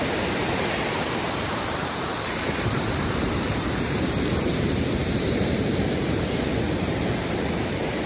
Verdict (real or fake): fake